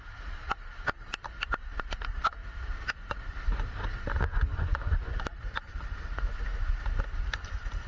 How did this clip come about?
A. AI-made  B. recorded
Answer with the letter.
B